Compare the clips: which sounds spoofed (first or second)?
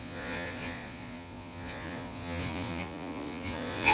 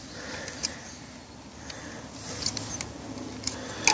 first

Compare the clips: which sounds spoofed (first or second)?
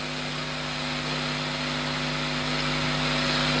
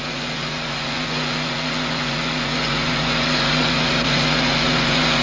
second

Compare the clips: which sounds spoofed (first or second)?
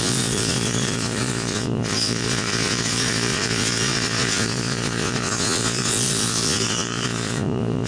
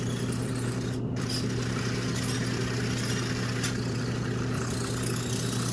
first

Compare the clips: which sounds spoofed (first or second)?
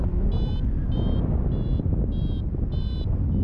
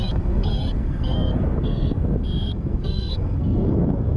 second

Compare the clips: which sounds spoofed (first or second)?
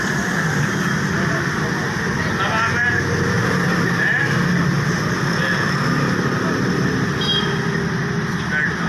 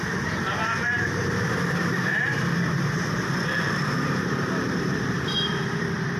second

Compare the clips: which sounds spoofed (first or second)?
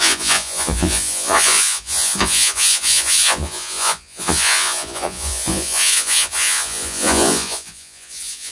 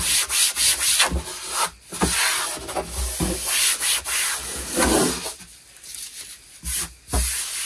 first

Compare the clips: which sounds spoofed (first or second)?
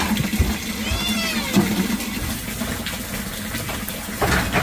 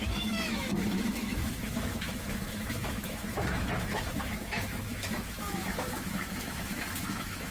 second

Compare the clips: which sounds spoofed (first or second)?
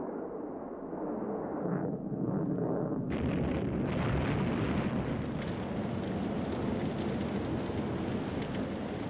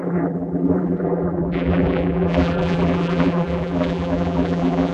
second